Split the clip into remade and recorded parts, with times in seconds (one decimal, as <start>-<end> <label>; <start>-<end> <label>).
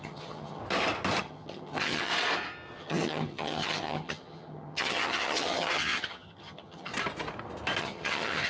0.0-0.6 remade; 0.6-1.2 recorded; 1.2-2.1 remade; 2.1-2.8 recorded; 2.8-6.9 remade; 6.9-7.8 recorded; 7.8-8.5 remade